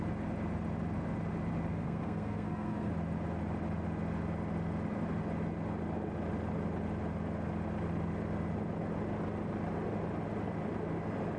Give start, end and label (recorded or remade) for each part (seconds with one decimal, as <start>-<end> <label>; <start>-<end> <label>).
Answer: 0.0-1.7 recorded; 1.7-2.9 remade; 2.9-11.4 recorded